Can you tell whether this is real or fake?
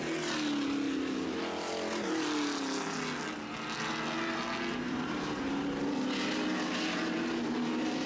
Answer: real